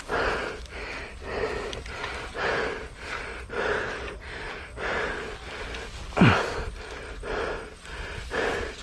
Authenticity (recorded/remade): recorded